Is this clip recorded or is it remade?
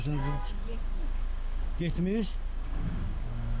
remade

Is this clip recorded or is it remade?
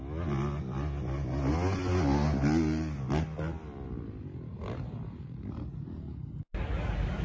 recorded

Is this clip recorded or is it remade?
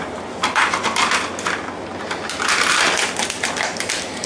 recorded